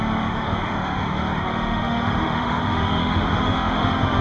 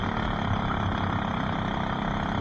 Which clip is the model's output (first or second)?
first